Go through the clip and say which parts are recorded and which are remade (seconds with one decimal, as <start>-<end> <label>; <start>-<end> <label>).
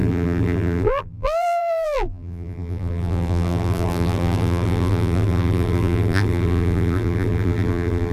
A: 0.0-8.1 remade